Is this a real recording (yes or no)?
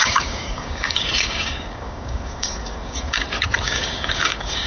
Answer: no